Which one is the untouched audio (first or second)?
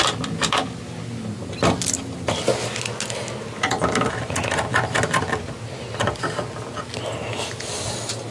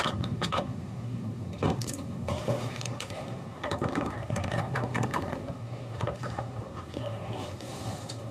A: first